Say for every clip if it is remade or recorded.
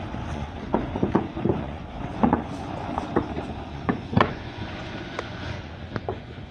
remade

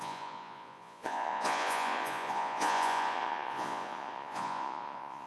remade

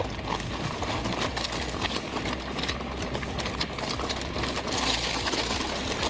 recorded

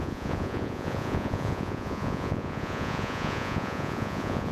remade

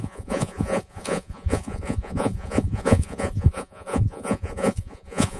remade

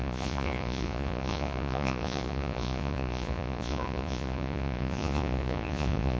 remade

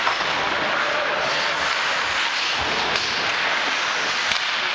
recorded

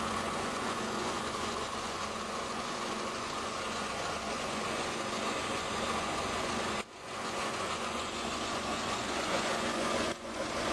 remade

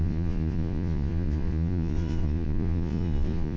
remade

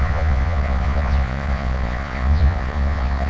remade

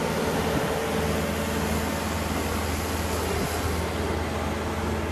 recorded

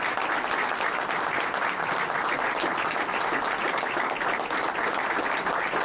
recorded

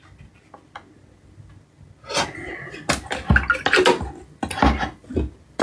recorded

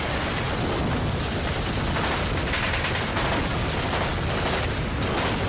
recorded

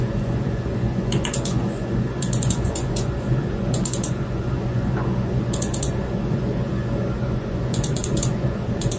remade